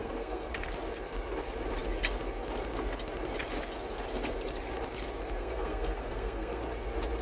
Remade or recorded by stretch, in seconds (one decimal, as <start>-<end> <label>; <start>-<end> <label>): 0.0-0.5 remade; 0.5-5.4 recorded; 5.4-6.6 remade; 6.6-7.2 recorded